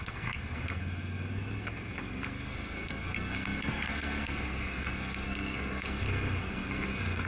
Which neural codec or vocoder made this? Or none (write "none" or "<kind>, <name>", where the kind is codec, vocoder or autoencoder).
codec, SNAC